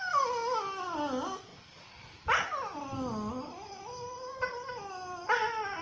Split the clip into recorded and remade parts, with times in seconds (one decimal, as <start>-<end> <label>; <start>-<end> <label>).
0.0-5.8 recorded